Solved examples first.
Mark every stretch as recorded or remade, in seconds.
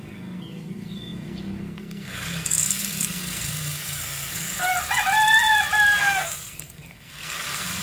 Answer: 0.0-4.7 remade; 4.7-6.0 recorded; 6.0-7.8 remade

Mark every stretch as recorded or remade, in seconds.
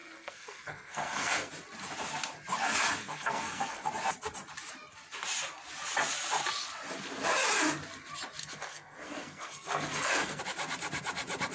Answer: 0.0-1.5 remade; 1.5-3.0 recorded; 3.0-3.9 remade; 3.9-8.4 recorded; 8.4-10.4 remade; 10.4-11.5 recorded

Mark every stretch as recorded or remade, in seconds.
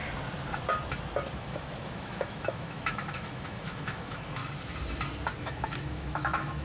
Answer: 0.0-1.4 recorded; 1.4-4.4 remade; 4.4-5.4 recorded; 5.4-6.6 remade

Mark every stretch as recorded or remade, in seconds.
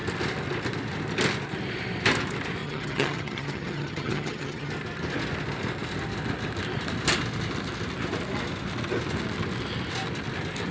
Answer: 0.0-2.6 recorded; 2.6-4.7 remade; 4.7-10.7 recorded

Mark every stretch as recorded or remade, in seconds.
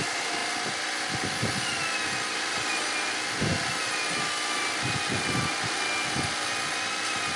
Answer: 0.0-7.4 recorded